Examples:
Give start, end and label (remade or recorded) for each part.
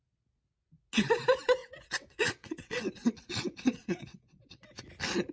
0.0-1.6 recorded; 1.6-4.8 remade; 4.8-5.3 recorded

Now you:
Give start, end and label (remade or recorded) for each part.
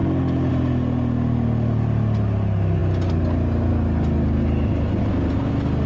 0.0-5.9 recorded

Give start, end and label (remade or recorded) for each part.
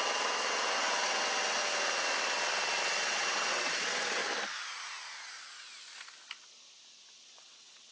0.0-1.6 remade; 1.6-2.8 recorded; 2.8-4.2 remade; 4.2-7.4 recorded; 7.4-7.9 remade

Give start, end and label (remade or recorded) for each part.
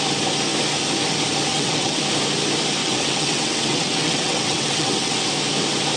0.0-1.5 recorded; 1.5-2.0 remade; 2.0-2.8 recorded; 2.8-5.3 remade; 5.3-6.0 recorded